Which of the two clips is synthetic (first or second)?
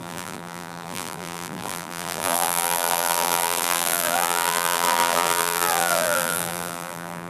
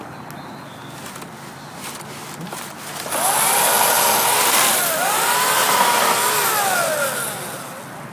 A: first